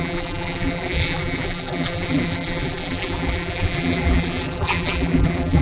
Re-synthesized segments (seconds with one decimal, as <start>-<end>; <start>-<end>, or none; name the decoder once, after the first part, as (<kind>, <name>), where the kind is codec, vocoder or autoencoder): 0.0-5.6 (vocoder, BigVGAN v2)